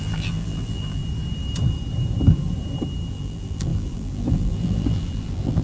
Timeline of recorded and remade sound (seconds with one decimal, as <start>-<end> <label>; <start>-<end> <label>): 0.0-1.0 remade; 1.0-3.1 recorded; 3.1-5.6 remade